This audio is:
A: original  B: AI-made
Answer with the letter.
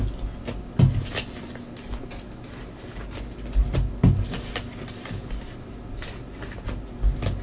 A